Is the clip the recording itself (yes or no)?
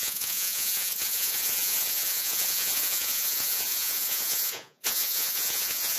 no